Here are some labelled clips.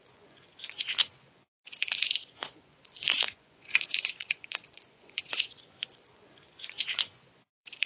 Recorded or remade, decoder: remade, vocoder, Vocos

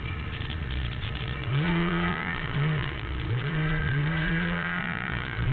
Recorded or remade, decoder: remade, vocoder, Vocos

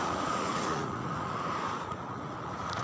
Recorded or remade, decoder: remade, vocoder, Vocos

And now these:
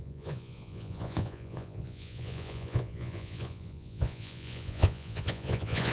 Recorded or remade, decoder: remade, vocoder, Vocos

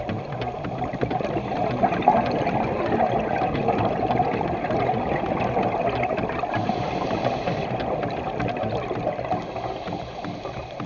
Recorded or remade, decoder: recorded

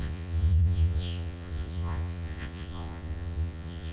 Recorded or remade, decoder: remade, vocoder, Vocos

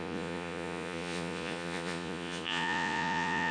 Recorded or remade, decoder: remade, vocoder, Vocos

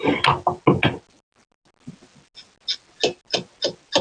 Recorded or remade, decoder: recorded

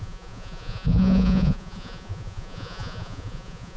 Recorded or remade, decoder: remade, vocoder, Vocos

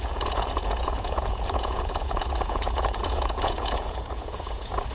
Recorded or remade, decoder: remade, vocoder, Vocos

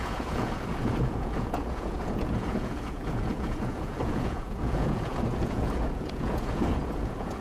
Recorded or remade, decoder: remade, vocoder, Vocos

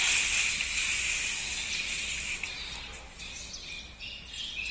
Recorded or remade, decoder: recorded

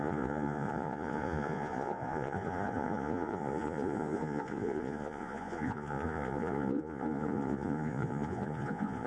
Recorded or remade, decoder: remade, vocoder, Vocos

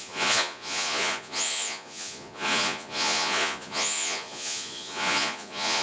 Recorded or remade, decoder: remade, vocoder, Vocos